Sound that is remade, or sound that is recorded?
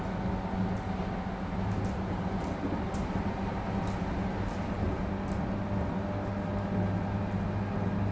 recorded